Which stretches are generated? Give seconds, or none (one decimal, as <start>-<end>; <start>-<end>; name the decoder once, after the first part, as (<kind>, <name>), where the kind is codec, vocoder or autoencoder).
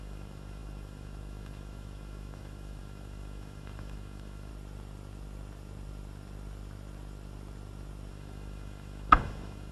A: 0.0-4.5 (autoencoder, DAC-VAE); 8.1-9.7